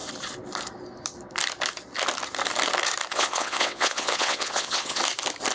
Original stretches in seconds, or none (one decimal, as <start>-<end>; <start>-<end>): 0.0-3.1; 5.0-5.5